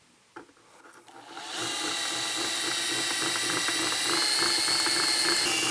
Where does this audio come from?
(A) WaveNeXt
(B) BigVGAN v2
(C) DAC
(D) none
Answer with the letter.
D